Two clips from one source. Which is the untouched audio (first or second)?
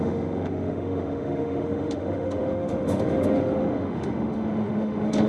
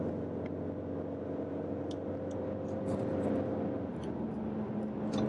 second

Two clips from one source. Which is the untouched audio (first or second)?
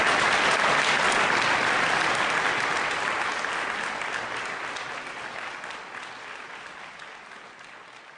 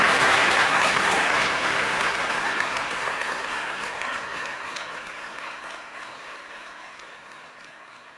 first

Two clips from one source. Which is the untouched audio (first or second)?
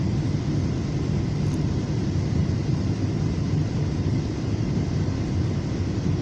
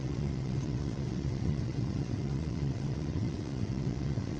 first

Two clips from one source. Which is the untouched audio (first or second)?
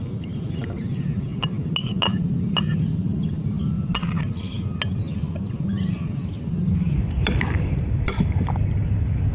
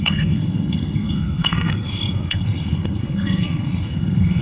first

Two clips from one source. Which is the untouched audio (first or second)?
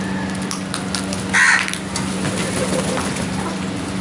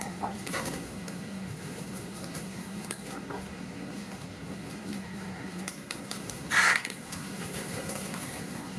first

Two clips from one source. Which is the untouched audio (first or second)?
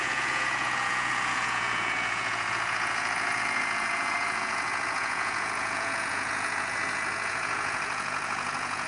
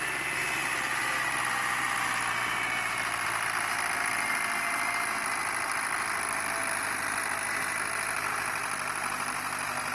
second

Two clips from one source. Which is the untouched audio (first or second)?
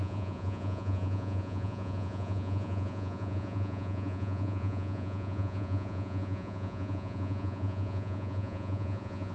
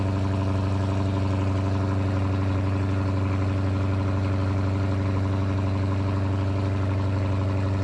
second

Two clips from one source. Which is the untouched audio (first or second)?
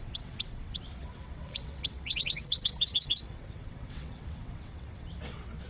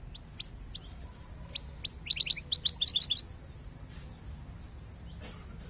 second